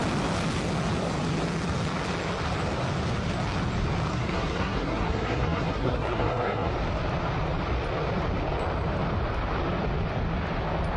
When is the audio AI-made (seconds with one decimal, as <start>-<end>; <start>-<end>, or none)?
4.1-6.7